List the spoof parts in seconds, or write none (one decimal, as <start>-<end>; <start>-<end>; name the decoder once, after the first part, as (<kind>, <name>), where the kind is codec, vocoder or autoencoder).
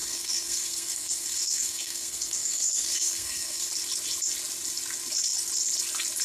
0.0-3.7 (codec, SNAC)